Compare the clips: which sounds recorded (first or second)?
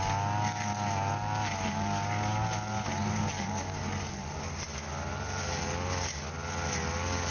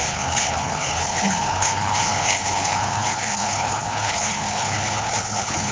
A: first